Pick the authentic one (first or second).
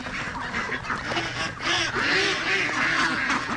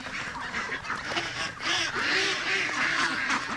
first